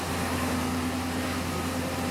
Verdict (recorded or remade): recorded